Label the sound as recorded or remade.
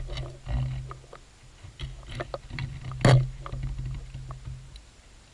recorded